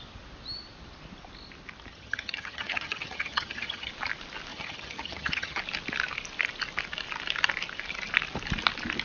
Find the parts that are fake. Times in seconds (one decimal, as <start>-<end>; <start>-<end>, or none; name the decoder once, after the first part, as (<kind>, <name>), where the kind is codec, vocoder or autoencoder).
1.9-3.9 (vocoder, HiFi-GAN); 4.5-5.6